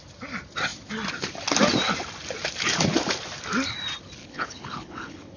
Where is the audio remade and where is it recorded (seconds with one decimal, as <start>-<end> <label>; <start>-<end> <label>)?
0.0-4.2 recorded; 4.2-5.4 remade